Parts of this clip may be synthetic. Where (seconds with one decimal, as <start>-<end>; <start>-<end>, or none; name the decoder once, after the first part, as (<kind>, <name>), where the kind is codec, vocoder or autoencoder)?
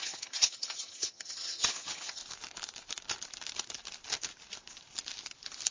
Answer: 0.0-2.2 (vocoder, HiFi-GAN)